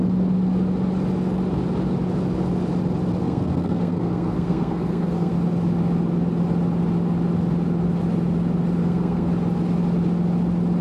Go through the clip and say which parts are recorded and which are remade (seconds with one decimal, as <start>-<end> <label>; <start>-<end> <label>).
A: 0.0-3.2 recorded; 3.2-5.3 remade; 5.3-8.8 recorded; 8.8-9.3 remade; 9.3-10.8 recorded